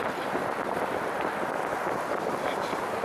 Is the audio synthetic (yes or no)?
no